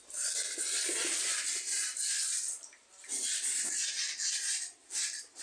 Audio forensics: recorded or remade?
recorded